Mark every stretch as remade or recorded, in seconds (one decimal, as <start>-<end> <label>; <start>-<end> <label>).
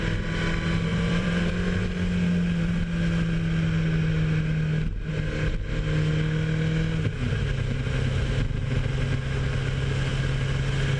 0.0-0.9 recorded; 0.9-1.5 remade; 1.5-11.0 recorded